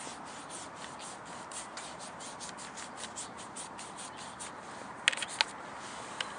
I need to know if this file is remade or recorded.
recorded